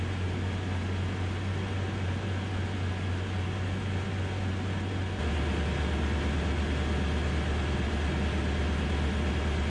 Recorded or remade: recorded